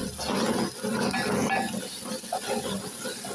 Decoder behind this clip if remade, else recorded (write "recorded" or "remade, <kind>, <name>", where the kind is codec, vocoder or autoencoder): recorded